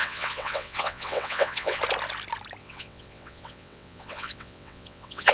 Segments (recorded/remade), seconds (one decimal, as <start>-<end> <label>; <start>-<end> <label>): 0.0-1.8 remade; 1.8-2.6 recorded; 2.6-5.3 remade

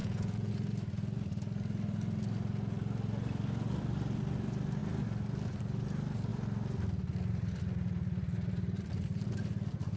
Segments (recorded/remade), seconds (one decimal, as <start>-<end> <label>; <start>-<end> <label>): 0.0-0.5 remade; 0.5-10.0 recorded

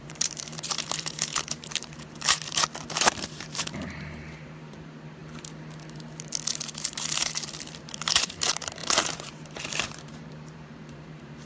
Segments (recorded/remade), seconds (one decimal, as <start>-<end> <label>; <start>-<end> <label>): 0.0-5.2 remade; 5.2-6.5 recorded; 6.5-11.5 remade

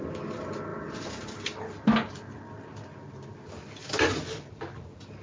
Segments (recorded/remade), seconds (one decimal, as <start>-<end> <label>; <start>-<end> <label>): 0.0-5.2 recorded

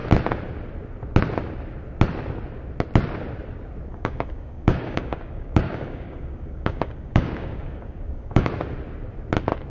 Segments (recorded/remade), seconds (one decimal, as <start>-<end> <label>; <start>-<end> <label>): 0.0-3.9 recorded; 3.9-8.5 remade; 8.5-9.7 recorded

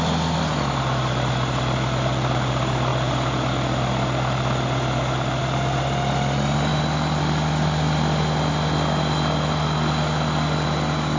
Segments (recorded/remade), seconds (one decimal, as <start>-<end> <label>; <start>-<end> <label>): 0.0-11.2 recorded

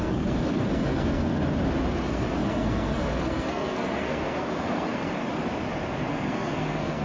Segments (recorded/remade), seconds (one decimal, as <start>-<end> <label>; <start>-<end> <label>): 0.0-1.4 remade; 1.4-1.9 recorded; 1.9-5.2 remade; 5.2-6.1 recorded; 6.1-7.0 remade

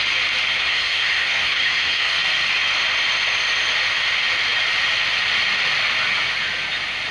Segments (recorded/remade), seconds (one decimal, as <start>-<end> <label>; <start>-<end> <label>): 0.0-0.5 recorded; 0.5-2.2 remade; 2.2-7.1 recorded